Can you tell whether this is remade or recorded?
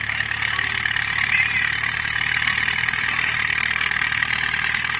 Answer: remade